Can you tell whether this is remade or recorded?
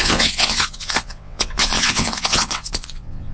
remade